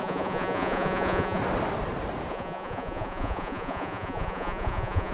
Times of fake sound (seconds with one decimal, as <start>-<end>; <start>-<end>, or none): 0.0-1.4; 2.3-5.1